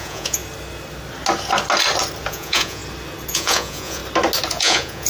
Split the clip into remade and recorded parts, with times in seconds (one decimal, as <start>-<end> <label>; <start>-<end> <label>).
0.0-0.4 remade; 0.4-2.3 recorded; 2.3-2.8 remade; 2.8-3.3 recorded; 3.3-4.0 remade; 4.0-4.5 recorded; 4.5-5.1 remade